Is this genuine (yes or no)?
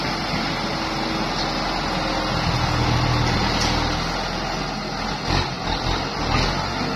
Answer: yes